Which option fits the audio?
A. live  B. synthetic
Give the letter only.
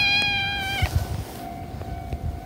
A